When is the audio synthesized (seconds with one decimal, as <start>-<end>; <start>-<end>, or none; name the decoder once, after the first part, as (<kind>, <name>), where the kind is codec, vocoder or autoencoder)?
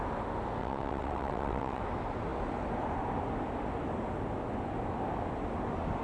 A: 0.6-1.8 (vocoder, WaveNeXt)